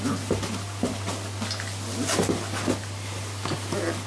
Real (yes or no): yes